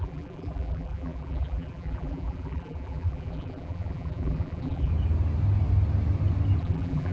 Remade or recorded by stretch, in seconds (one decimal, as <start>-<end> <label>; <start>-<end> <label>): 0.0-4.9 remade; 4.9-6.6 recorded; 6.6-7.1 remade